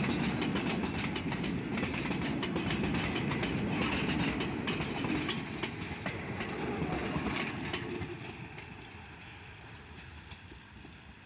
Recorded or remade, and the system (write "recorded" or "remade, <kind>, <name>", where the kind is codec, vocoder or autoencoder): recorded